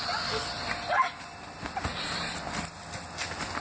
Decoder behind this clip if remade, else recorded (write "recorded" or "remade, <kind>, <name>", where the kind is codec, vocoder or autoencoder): recorded